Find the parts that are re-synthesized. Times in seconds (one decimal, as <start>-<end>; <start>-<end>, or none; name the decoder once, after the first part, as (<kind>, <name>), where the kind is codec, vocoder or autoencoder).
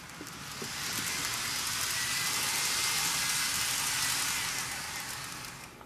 none